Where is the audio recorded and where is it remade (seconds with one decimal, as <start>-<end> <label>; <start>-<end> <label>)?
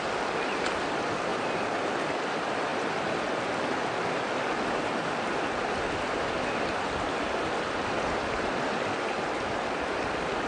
0.0-10.5 recorded